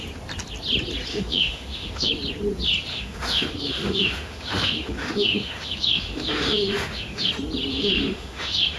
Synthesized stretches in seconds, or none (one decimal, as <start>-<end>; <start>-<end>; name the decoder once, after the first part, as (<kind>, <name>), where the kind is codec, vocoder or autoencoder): 1.1-2.1 (autoencoder, DAC-VAE); 2.9-7.3; 7.7-8.8